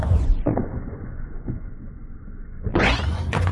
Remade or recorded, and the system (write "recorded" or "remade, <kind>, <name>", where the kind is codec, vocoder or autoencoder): remade, vocoder, Vocos